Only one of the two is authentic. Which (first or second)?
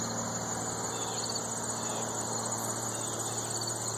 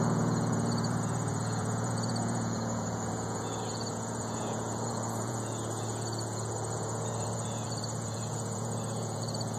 first